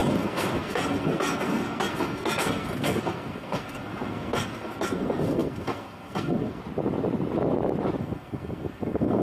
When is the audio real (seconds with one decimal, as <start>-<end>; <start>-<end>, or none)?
6.6-8.0